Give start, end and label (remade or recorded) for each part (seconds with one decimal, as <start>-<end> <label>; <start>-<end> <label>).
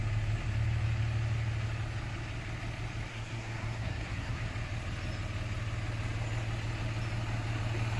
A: 0.0-3.1 recorded; 3.1-4.4 remade; 4.4-8.0 recorded